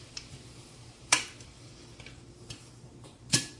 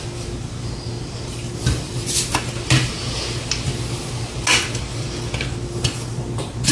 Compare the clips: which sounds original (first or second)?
second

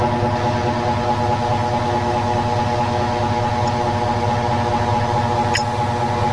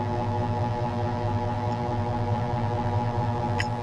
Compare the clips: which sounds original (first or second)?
first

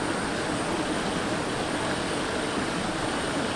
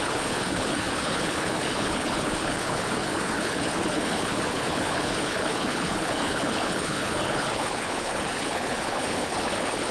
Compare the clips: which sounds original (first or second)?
first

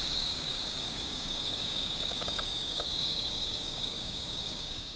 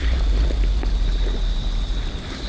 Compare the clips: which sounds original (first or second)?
second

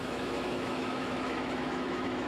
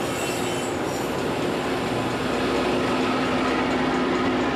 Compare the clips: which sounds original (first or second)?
second